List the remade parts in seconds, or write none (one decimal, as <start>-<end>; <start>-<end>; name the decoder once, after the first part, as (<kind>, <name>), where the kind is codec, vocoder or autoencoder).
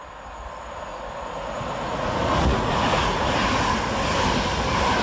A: 0.9-1.5 (vocoder, Vocos); 1.9-3.4